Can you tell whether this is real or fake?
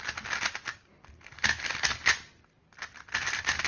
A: real